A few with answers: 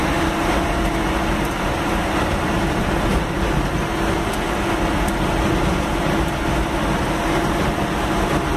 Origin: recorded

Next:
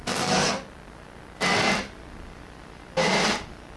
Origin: recorded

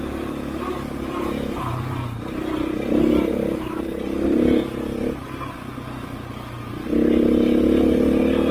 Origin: recorded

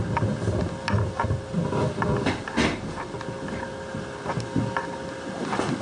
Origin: recorded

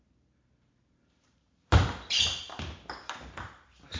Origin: recorded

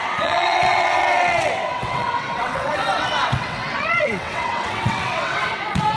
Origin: remade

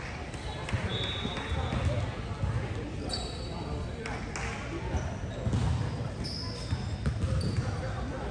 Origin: recorded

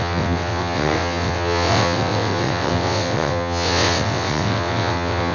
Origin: remade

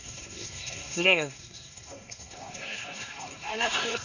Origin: remade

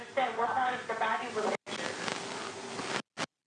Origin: recorded